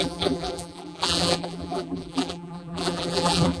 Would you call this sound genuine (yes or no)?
no